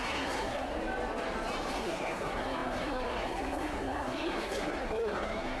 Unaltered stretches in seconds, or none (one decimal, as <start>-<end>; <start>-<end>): 0.7-1.7